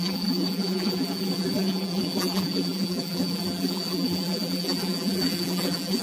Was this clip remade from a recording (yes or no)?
yes